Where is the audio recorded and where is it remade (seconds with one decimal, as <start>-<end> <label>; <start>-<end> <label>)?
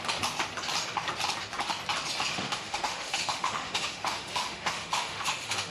0.0-2.3 recorded; 2.3-5.7 remade